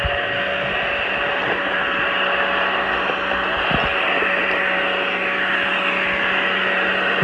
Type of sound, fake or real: real